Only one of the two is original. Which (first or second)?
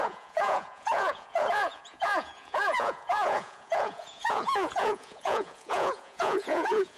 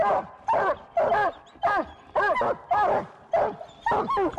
second